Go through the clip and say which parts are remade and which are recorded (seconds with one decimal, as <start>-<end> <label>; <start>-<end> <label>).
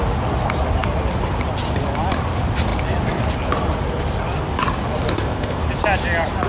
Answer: 0.0-5.1 recorded; 5.1-5.6 remade; 5.6-6.5 recorded